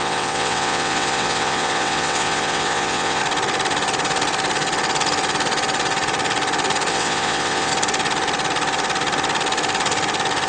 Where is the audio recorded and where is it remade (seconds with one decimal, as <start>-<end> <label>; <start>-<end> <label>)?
0.0-3.2 remade; 3.2-6.9 recorded; 6.9-7.7 remade; 7.7-10.5 recorded